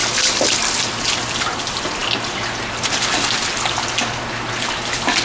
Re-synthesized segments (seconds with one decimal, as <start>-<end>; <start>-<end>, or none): 0.0-1.1